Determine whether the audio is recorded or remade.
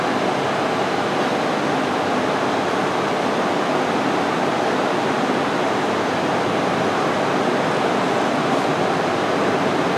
recorded